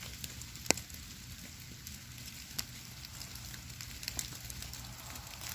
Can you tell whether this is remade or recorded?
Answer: recorded